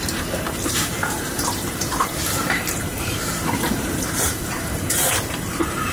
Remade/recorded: remade